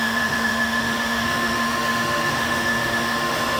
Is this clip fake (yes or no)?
yes